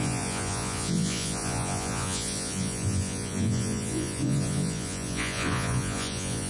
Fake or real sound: fake